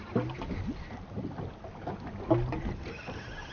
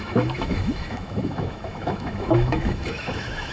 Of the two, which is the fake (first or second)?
second